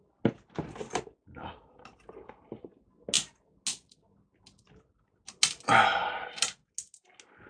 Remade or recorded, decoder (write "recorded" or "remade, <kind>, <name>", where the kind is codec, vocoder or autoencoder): recorded